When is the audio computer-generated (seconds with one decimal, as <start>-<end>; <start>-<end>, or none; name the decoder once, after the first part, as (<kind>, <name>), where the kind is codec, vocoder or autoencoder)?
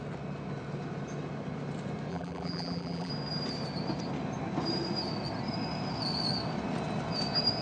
2.1-3.1 (vocoder, BigVGAN v2)